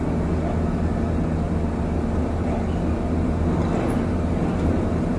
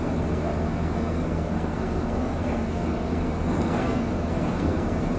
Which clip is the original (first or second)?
first